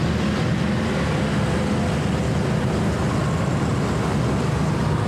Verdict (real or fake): real